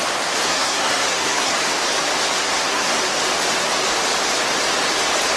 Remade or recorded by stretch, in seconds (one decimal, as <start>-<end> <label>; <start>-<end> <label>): 0.0-0.4 recorded; 0.4-1.5 remade; 1.5-2.4 recorded; 2.4-3.0 remade; 3.0-5.4 recorded